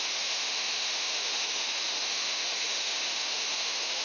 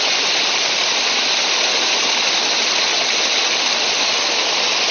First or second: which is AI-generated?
first